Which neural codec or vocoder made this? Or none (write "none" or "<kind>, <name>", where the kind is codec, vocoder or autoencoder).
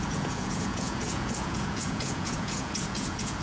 vocoder, Vocos